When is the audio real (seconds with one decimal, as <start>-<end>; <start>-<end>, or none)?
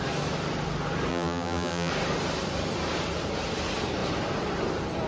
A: 0.0-1.1; 1.9-5.1